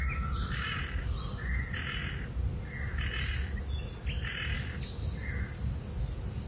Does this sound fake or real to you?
real